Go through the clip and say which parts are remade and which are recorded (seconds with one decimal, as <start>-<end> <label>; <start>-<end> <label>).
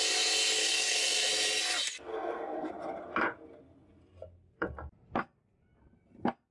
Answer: 0.0-0.6 recorded; 0.6-1.3 remade; 1.3-2.1 recorded; 2.1-2.7 remade; 2.7-6.5 recorded